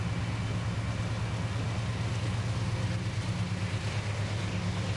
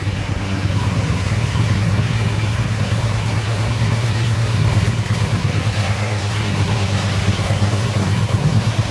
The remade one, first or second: second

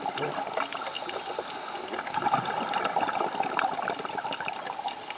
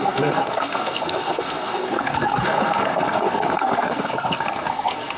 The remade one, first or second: second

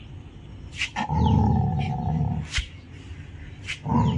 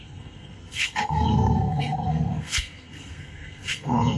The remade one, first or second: second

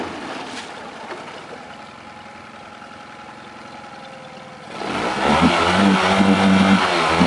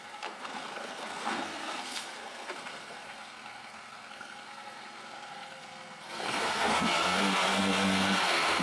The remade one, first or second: second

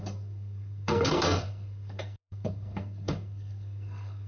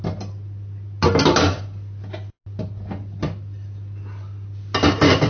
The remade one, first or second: first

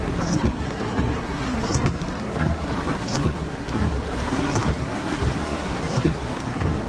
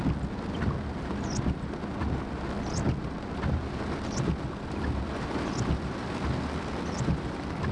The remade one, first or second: first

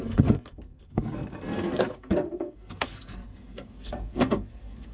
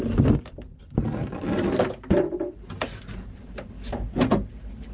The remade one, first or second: first